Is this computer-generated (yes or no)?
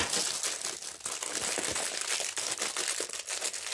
no